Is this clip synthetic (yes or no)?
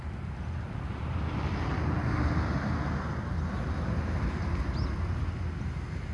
no